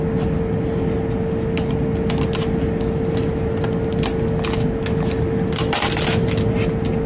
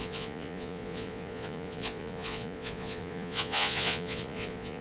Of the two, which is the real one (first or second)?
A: first